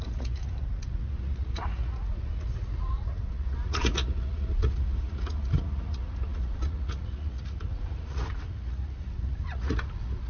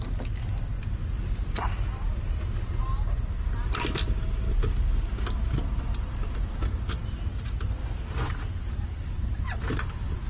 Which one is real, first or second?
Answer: second